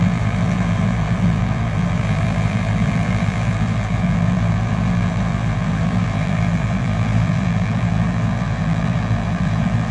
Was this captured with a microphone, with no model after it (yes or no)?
no